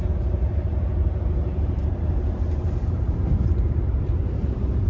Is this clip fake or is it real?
fake